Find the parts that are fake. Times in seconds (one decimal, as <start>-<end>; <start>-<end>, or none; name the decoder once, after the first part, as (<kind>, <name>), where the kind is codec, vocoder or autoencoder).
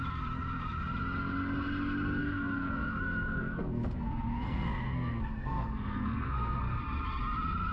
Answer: 2.2-6.8 (codec, SNAC)